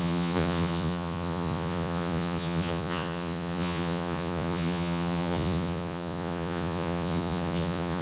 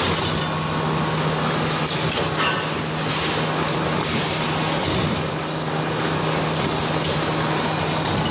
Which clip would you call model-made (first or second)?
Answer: first